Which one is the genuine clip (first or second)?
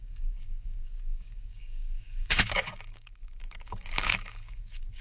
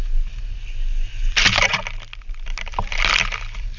second